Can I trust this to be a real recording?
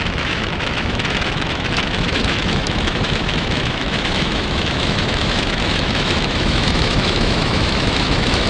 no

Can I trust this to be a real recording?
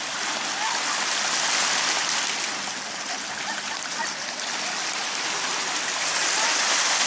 yes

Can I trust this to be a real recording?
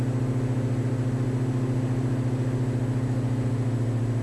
yes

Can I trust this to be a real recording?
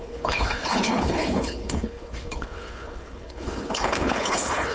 no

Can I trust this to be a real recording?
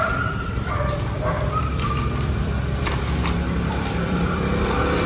no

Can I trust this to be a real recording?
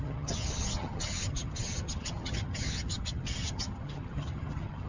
no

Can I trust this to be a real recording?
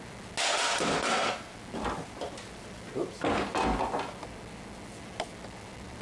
yes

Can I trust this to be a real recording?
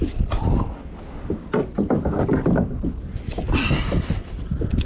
yes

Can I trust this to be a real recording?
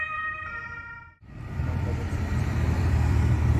no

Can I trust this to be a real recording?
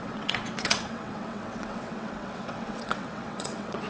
no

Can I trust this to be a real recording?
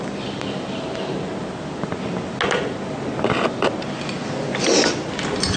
yes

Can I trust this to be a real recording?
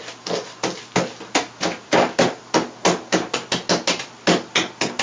yes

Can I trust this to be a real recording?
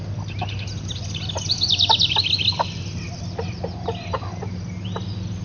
yes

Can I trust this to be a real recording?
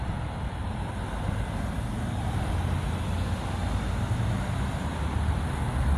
yes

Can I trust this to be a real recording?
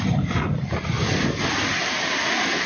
yes